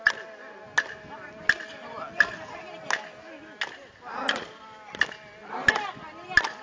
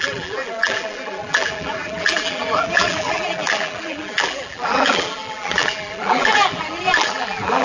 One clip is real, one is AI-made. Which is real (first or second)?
first